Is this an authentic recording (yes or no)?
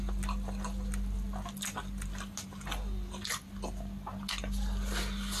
yes